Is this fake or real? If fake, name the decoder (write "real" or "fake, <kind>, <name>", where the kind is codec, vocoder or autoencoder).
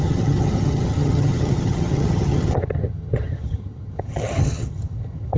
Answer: fake, vocoder, HiFi-GAN